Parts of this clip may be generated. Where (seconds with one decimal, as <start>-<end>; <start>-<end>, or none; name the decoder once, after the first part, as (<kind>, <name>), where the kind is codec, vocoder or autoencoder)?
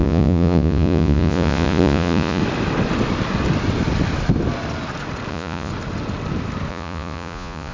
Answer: 0.0-2.4 (vocoder, Vocos); 5.3-5.7; 6.7-7.7